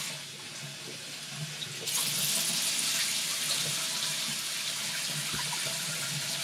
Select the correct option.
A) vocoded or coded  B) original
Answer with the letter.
B